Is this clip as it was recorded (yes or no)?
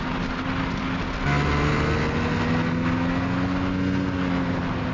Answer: yes